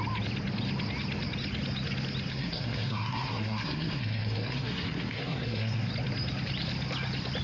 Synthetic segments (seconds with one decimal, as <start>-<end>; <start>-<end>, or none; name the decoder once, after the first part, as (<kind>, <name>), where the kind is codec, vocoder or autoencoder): 2.3-5.9 (codec, SNAC)

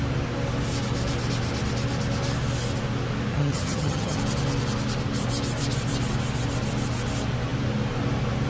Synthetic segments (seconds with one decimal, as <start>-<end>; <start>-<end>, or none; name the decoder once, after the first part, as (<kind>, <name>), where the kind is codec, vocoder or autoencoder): 3.3-4.2 (vocoder, HiFi-GAN)

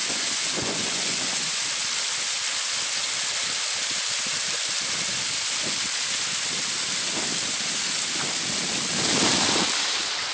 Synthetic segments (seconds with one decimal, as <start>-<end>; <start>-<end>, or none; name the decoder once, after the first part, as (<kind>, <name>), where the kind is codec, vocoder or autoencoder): 0.0-1.6 (vocoder, Vocos)

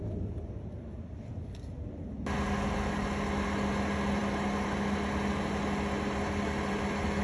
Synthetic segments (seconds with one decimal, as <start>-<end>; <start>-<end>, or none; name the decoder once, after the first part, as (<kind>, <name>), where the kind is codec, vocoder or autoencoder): none

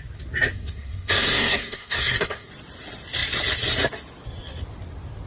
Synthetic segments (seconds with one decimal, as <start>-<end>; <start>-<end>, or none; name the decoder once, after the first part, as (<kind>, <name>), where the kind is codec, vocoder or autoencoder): 0.5-2.5 (codec, SNAC)

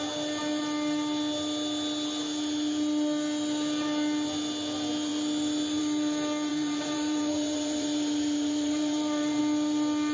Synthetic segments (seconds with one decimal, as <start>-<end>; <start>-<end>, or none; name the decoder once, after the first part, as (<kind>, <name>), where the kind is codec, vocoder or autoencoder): 6.5-9.4 (vocoder, BigVGAN v2)

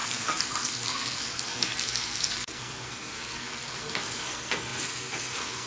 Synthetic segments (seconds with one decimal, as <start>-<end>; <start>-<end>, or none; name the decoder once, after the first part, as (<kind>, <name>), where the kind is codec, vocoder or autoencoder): 0.0-5.7 (codec, SNAC)

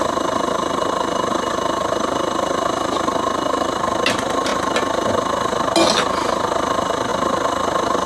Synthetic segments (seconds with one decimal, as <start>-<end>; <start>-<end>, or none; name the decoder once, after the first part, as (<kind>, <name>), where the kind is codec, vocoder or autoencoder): none